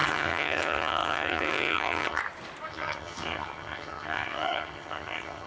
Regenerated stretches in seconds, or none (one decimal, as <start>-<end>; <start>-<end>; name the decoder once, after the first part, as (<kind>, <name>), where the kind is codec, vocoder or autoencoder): 0.0-2.2 (vocoder, HiFi-GAN); 2.7-5.5